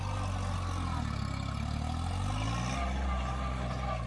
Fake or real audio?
real